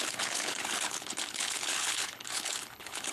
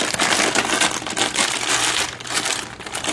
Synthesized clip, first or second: first